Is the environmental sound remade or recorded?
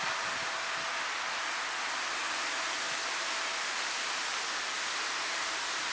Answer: recorded